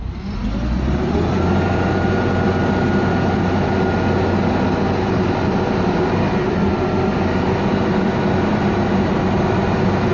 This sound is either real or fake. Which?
real